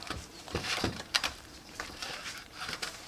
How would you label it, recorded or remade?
remade